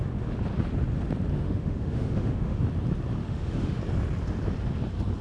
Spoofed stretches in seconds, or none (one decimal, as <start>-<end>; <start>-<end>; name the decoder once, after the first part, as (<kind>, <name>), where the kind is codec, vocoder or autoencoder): 1.3-2.6 (autoencoder, DAC-VAE); 3.2-3.8